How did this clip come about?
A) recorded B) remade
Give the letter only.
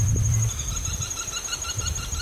B